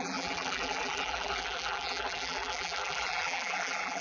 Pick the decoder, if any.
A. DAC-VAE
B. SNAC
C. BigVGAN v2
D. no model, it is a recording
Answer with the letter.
C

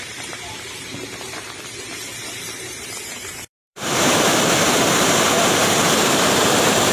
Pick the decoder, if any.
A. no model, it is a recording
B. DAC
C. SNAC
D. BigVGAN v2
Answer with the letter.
D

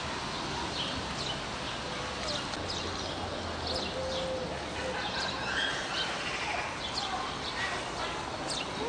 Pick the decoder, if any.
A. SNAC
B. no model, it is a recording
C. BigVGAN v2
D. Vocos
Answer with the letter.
B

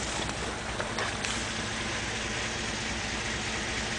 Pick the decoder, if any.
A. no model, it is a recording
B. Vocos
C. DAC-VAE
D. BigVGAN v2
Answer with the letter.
A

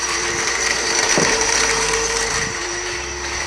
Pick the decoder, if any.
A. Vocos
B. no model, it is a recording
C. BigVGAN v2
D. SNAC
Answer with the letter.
C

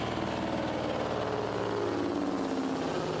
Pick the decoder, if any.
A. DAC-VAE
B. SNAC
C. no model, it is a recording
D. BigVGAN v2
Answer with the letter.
C